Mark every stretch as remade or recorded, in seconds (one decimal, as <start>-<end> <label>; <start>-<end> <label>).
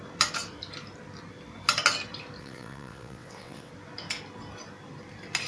0.0-2.4 recorded; 2.4-3.7 remade; 3.7-5.5 recorded